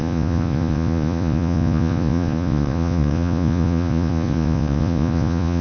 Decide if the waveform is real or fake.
fake